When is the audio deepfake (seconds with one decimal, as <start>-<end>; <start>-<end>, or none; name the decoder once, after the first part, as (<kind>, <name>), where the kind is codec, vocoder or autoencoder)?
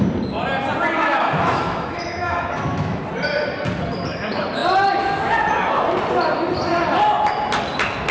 1.0-3.0 (autoencoder, DAC-VAE)